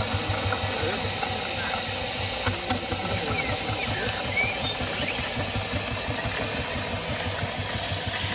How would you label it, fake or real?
real